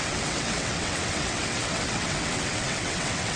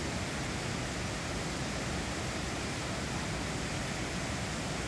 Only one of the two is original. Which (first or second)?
second